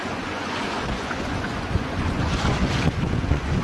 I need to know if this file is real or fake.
fake